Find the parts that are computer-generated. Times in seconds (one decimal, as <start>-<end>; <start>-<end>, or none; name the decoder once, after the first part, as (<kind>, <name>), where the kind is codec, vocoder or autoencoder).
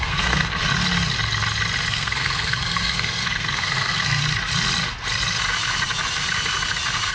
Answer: 0.0-0.6 (codec, SNAC); 1.9-4.2